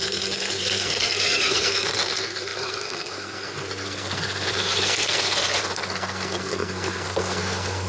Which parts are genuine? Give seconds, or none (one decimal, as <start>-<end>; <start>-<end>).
none